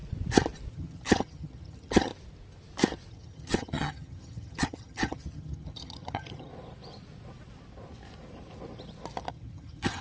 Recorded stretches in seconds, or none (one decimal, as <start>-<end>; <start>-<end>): 0.0-0.7; 2.1-3.1; 6.5-9.3